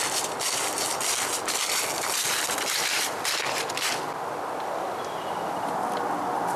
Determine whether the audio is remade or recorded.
recorded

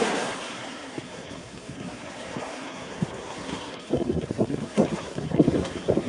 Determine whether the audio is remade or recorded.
remade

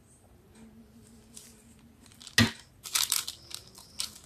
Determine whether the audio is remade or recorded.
recorded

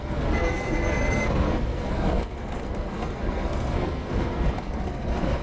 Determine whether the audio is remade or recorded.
remade